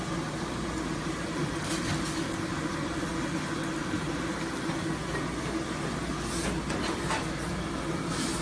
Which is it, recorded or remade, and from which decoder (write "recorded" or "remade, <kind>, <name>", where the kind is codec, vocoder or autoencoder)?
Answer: recorded